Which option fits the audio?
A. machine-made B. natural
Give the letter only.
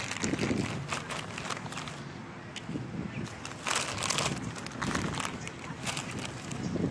B